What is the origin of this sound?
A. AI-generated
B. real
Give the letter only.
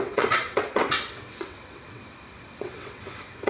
A